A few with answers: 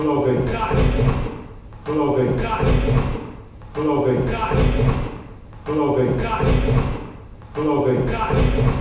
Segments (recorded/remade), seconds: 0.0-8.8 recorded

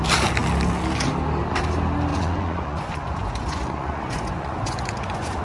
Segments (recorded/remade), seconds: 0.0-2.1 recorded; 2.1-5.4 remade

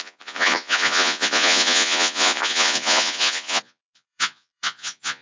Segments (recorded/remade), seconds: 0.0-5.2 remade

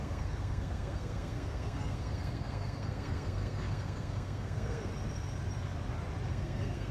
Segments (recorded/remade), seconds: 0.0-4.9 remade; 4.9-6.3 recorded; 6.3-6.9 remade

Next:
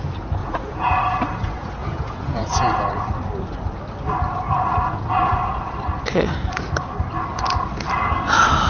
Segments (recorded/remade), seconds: 0.0-0.4 recorded; 0.4-1.0 remade; 1.0-1.8 recorded; 1.8-2.8 remade; 2.8-8.7 recorded

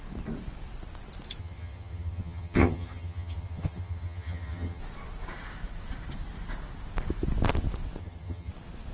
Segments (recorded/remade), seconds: 0.0-1.4 recorded; 1.4-4.8 remade; 4.8-8.0 recorded; 8.0-8.5 remade; 8.5-8.9 recorded

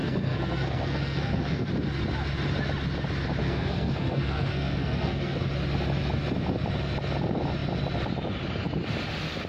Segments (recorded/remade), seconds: 0.0-1.7 remade; 1.7-3.4 recorded; 3.4-5.4 remade; 5.4-9.5 recorded